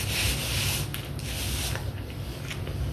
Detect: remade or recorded recorded